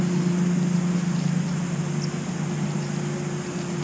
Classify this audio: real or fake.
real